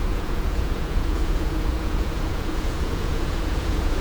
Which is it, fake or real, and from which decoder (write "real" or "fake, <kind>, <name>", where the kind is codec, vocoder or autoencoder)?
fake, vocoder, Vocos